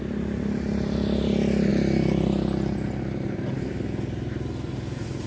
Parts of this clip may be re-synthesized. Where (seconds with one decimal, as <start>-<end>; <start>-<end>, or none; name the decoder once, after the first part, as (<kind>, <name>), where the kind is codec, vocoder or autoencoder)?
none

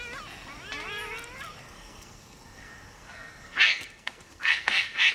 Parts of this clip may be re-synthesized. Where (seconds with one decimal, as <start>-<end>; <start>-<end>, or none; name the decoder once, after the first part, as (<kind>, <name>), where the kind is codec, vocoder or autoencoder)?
1.6-5.1 (codec, SNAC)